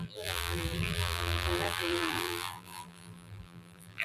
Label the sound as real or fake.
fake